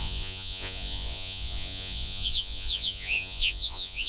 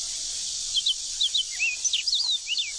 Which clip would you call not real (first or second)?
first